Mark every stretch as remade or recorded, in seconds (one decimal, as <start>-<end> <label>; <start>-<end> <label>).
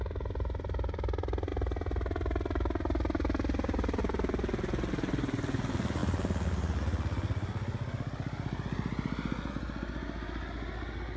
0.0-11.2 recorded